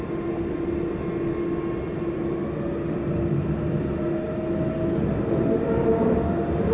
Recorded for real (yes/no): yes